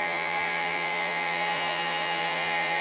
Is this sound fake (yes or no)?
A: yes